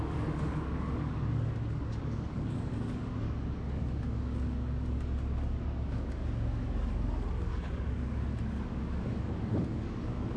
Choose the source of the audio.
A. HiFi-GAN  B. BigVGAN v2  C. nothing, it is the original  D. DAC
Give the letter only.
D